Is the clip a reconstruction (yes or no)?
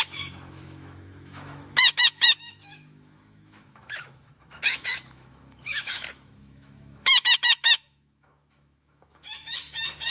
yes